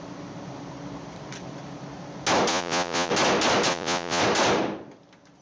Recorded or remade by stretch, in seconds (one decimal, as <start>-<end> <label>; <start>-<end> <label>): 0.0-2.5 recorded; 2.5-3.1 remade; 3.1-3.7 recorded; 3.7-4.2 remade; 4.2-5.4 recorded

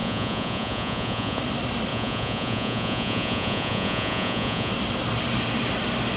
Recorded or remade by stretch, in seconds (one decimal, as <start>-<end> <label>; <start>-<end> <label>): 0.0-1.4 remade; 1.4-1.9 recorded; 1.9-4.7 remade; 4.7-6.2 recorded

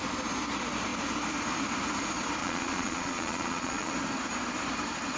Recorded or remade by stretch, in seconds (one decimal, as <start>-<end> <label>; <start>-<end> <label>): 0.0-2.4 recorded; 2.4-3.9 remade; 3.9-5.2 recorded